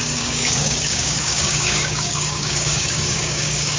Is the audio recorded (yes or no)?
no